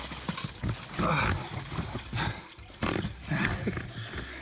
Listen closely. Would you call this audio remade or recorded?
recorded